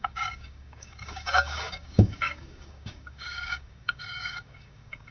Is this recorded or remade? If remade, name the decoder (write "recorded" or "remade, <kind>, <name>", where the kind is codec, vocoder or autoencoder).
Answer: remade, codec, DAC